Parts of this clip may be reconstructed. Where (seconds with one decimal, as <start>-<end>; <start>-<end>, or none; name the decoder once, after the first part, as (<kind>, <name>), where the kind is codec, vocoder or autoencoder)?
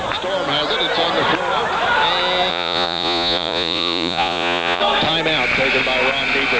2.5-4.8 (vocoder, Vocos)